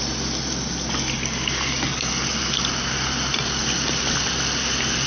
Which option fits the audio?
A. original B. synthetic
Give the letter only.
A